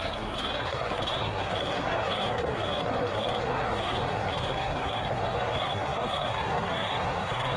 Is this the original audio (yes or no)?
no